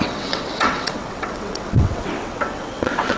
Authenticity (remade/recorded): remade